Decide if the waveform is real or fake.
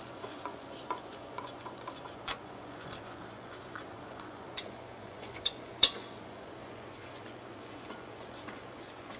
fake